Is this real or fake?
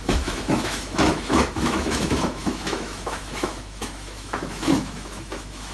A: fake